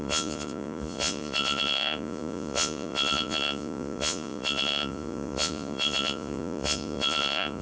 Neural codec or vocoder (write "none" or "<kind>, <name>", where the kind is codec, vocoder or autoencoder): vocoder, Vocos